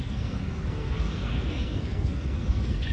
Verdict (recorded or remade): remade